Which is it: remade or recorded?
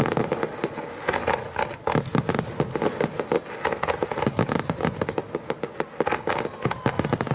recorded